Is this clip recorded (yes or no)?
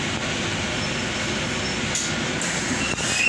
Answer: yes